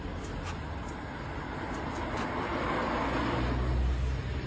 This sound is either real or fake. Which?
real